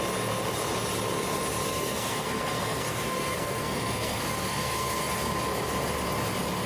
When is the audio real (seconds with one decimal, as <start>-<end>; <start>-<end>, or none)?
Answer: 0.0-1.7; 5.3-6.7